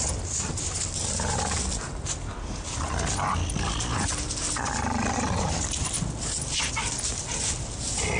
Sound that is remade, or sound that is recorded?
recorded